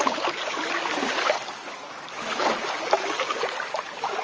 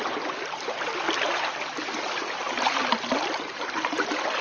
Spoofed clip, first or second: first